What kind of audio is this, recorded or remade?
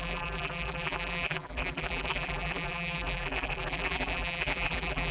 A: remade